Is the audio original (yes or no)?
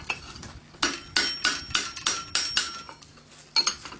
yes